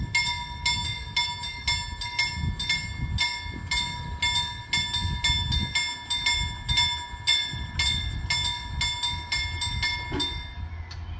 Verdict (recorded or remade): recorded